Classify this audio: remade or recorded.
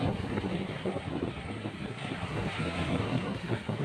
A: remade